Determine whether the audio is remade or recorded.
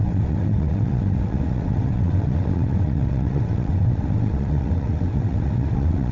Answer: remade